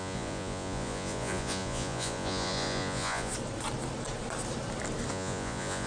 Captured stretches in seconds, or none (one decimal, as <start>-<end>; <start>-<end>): 3.3-5.1